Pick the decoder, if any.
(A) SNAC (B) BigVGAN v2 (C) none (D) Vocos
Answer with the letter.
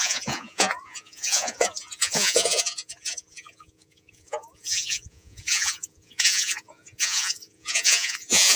D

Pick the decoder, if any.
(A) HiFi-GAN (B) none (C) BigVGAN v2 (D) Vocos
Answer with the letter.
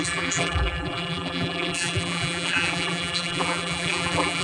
C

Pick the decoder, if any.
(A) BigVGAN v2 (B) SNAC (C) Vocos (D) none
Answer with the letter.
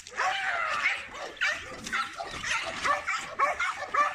D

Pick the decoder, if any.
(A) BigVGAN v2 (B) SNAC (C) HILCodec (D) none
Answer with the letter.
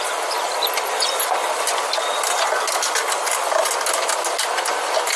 D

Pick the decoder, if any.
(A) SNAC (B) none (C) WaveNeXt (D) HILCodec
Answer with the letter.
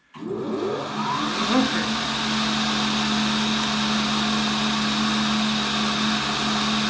B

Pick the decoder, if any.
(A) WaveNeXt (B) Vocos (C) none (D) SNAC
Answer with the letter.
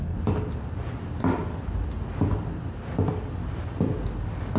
C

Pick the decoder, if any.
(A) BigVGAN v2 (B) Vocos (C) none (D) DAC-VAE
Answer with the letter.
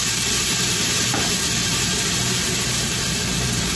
A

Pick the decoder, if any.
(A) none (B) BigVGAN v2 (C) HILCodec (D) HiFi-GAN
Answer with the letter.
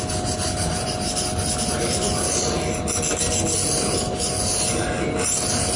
A